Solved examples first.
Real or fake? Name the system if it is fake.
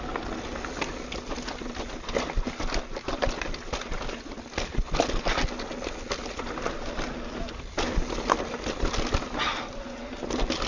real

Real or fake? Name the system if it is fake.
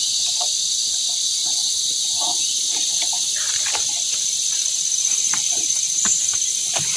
fake, vocoder, BigVGAN v2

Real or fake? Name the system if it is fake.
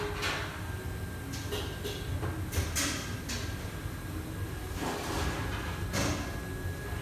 real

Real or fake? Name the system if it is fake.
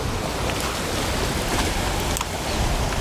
real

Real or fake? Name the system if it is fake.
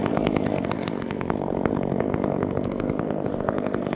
fake, codec, SNAC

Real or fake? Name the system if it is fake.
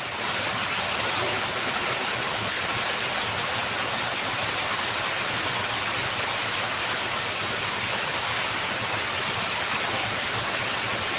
real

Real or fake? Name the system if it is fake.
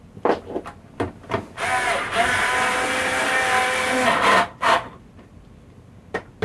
real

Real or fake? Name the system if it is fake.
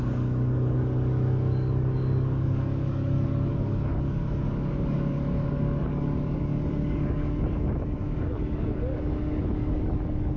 fake, codec, DAC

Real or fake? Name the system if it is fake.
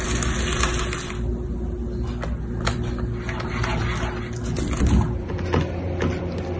real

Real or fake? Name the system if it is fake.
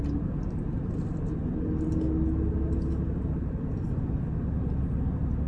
real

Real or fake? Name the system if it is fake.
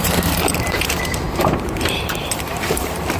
fake, vocoder, BigVGAN v2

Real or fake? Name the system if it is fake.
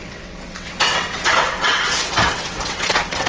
fake, vocoder, WaveNeXt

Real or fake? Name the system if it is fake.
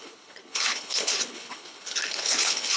fake, codec, HILCodec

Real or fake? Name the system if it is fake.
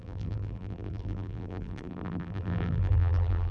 fake, vocoder, BigVGAN v2